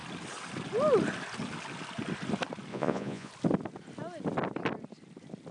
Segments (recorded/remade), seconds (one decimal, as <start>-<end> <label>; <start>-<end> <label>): 0.0-2.7 recorded; 2.7-3.3 remade; 3.3-5.5 recorded